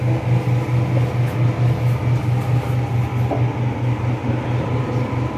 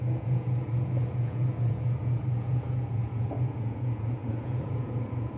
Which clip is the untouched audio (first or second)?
first